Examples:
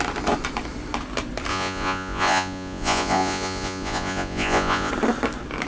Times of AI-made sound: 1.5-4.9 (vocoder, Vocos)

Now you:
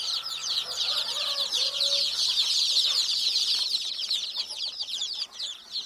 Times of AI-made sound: 0.0-5.9 (vocoder, Vocos)